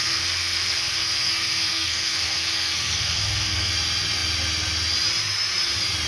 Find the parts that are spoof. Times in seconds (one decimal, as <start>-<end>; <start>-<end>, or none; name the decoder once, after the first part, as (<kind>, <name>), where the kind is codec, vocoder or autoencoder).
0.0-3.7 (codec, SNAC)